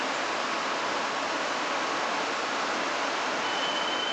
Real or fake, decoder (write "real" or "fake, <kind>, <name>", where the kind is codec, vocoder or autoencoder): real